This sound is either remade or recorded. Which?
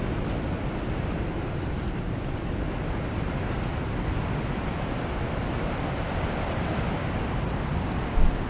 recorded